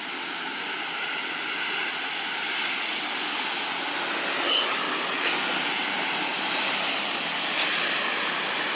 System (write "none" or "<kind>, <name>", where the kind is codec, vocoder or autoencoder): none